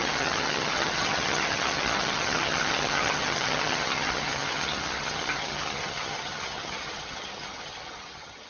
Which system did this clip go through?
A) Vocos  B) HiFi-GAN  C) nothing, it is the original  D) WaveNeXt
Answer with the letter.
B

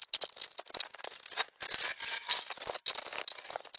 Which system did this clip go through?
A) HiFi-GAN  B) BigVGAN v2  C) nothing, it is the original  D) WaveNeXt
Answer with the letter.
C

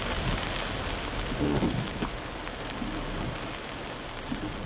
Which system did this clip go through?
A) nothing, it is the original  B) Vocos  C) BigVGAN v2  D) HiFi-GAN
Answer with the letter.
A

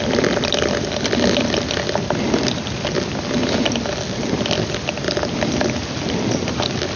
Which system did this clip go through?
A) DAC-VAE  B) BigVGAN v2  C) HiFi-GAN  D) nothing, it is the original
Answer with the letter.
D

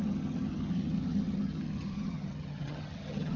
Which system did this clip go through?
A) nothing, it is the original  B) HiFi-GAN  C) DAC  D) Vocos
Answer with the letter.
B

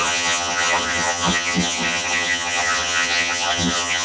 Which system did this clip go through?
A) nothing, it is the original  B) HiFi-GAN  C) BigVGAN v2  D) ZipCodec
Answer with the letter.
B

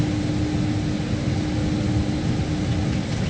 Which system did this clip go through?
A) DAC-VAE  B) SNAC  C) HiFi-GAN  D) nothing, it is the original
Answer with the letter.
D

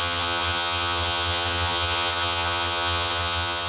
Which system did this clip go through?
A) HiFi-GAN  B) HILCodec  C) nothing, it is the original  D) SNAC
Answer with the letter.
A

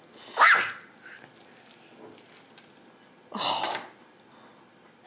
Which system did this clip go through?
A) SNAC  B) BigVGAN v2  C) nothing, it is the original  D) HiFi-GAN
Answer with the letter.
C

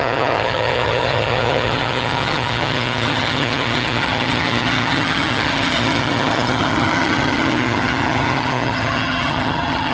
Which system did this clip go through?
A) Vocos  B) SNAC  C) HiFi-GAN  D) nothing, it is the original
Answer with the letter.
C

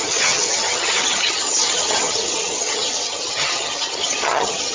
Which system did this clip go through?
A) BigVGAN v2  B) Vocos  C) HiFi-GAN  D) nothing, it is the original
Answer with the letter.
C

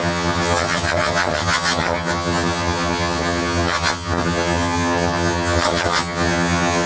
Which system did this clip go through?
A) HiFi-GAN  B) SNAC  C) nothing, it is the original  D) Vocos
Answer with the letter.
A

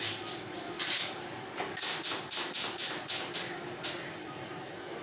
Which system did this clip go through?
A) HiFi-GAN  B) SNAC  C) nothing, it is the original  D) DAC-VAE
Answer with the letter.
C